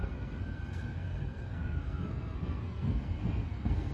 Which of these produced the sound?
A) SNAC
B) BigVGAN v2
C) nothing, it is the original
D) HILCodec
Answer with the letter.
A